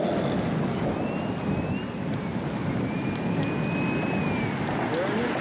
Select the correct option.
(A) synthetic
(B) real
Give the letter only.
B